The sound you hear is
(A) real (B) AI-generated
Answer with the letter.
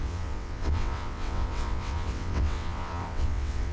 B